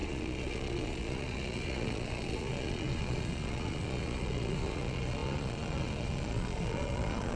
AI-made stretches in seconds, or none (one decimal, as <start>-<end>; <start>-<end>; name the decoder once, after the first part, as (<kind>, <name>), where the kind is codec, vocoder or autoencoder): 0.0-7.4 (vocoder, Vocos)